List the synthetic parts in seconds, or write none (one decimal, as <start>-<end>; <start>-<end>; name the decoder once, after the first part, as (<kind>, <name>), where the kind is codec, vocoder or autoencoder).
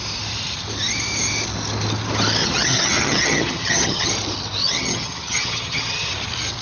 2.4-4.1 (vocoder, HiFi-GAN); 4.6-6.1